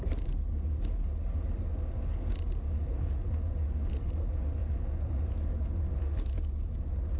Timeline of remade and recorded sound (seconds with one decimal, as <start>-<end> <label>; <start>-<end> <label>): 0.0-7.2 recorded